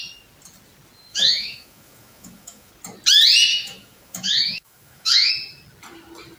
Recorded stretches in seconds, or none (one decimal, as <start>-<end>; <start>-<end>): 0.0-1.1; 2.7-3.5; 5.3-6.4